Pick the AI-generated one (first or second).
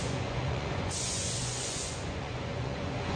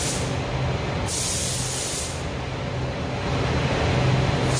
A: first